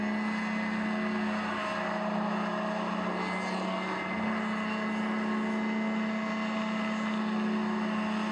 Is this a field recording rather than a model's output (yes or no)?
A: yes